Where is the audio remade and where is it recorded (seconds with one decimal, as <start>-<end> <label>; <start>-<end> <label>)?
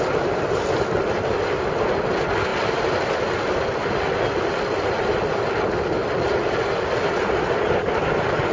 0.0-8.5 recorded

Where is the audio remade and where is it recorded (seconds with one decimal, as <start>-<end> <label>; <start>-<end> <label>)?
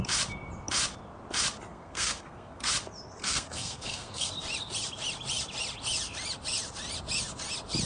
0.0-1.7 recorded; 1.7-2.7 remade; 2.7-3.2 recorded; 3.2-4.3 remade; 4.3-7.8 recorded